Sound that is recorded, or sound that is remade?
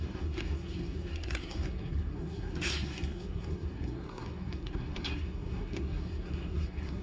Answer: remade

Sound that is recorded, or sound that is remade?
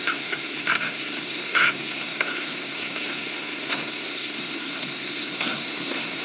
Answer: remade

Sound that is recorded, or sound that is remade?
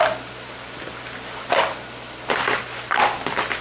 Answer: recorded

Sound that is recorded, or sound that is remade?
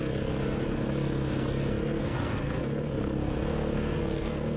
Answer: remade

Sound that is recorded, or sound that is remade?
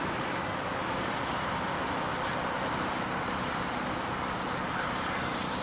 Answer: recorded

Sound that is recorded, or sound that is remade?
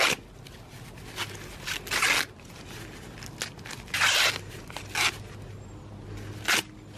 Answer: recorded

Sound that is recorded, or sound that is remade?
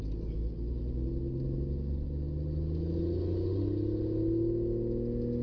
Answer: recorded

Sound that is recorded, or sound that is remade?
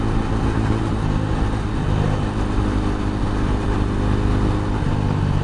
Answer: recorded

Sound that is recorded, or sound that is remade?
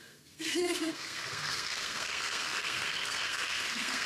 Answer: remade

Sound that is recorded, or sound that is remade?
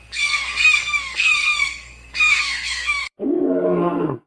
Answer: remade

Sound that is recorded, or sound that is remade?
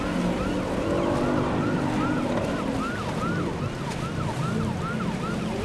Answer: recorded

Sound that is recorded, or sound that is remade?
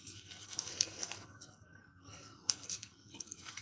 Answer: remade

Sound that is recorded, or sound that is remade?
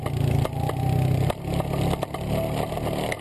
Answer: recorded